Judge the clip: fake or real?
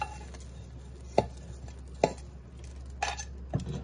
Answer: real